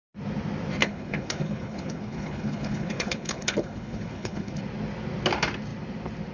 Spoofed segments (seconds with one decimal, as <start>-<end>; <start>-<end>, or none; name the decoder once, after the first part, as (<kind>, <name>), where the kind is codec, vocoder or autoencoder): 0.8-4.6 (codec, HILCodec)